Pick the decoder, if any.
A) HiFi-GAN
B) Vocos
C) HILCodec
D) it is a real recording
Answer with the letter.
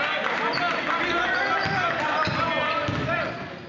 D